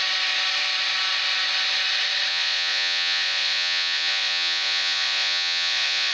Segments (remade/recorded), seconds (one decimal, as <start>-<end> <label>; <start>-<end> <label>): 0.0-2.3 recorded; 2.3-6.1 remade